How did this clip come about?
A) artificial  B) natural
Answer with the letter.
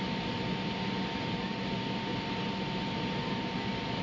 B